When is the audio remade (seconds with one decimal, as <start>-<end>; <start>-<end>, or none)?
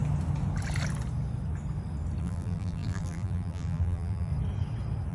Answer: 2.2-4.3